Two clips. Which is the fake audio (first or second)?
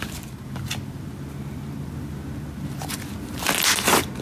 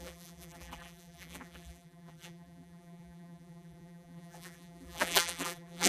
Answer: second